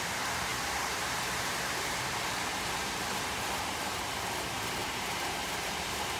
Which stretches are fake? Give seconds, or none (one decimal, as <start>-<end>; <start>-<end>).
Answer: 0.5-3.4; 4.8-6.2